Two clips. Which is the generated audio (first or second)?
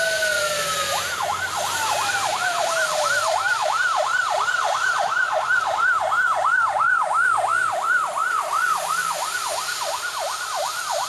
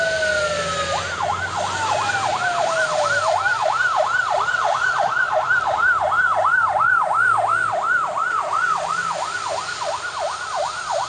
first